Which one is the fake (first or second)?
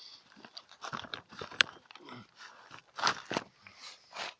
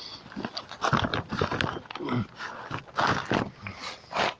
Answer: first